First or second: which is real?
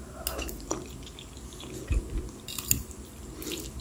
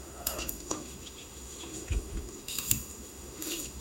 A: first